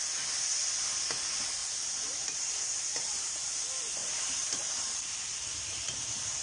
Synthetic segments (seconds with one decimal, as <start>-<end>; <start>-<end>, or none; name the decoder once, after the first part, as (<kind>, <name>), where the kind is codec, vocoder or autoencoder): 1.6-3.4 (vocoder, BigVGAN v2); 4.0-6.4